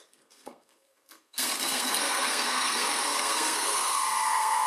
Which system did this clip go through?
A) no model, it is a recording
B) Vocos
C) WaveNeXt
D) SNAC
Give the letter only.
D